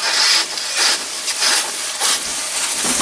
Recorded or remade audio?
recorded